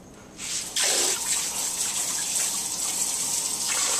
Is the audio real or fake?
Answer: real